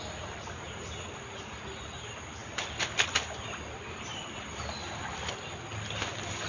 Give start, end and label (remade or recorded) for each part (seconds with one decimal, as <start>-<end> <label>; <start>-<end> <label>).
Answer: 0.0-6.5 recorded